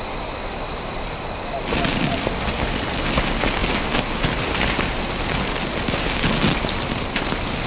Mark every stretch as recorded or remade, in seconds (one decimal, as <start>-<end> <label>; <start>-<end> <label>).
0.0-7.7 recorded